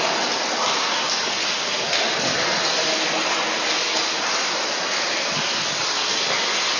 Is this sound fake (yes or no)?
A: no